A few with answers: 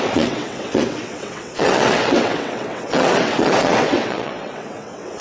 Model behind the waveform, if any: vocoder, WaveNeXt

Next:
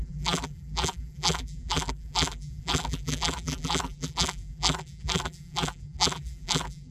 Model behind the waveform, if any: vocoder, BigVGAN v2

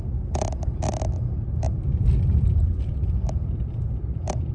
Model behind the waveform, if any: vocoder, BigVGAN v2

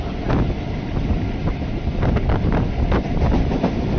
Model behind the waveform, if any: vocoder, BigVGAN v2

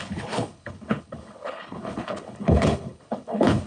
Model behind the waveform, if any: codec, HILCodec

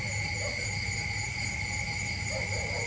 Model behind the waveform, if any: none